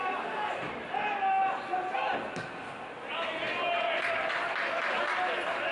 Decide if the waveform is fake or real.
real